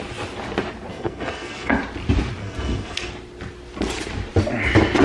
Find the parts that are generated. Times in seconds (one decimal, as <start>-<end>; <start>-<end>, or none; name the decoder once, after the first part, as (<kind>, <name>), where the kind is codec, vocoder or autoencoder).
0.9-1.8 (codec, SNAC); 2.4-3.1